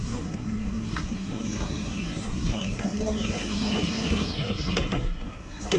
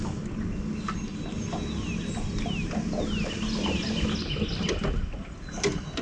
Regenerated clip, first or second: first